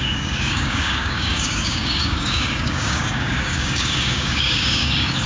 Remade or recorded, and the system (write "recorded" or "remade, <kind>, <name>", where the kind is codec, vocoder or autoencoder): remade, codec, DAC